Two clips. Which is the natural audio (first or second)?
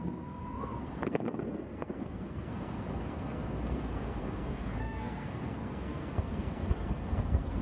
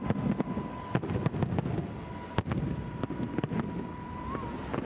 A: second